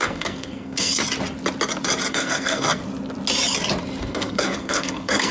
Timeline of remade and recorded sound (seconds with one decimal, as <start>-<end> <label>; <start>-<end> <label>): 0.0-1.0 remade; 1.0-2.1 recorded; 2.1-2.8 remade; 2.8-4.0 recorded; 4.0-5.3 remade